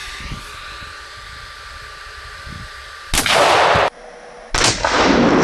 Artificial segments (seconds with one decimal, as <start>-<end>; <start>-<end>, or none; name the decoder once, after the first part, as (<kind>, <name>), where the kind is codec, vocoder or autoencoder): none